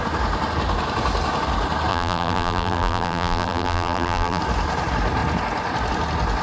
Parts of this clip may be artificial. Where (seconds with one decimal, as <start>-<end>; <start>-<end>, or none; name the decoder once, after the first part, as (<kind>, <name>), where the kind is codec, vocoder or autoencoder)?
1.9-4.4 (vocoder, BigVGAN v2)